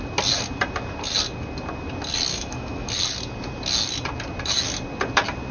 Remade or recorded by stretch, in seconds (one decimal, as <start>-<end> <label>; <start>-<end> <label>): 0.0-2.3 recorded; 2.3-2.9 remade; 2.9-5.5 recorded